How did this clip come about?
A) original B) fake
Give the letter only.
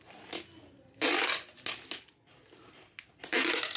A